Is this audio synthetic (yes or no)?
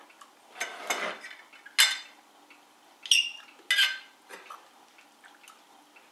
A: no